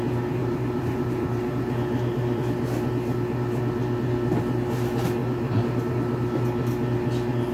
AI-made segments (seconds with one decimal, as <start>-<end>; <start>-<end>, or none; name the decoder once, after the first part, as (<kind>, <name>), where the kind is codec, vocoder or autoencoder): 0.4-2.4 (vocoder, BigVGAN v2); 5.2-5.8